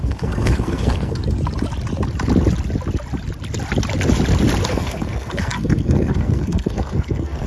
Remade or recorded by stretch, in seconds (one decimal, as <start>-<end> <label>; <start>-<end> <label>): 0.0-1.2 remade; 1.2-4.7 recorded; 4.7-7.5 remade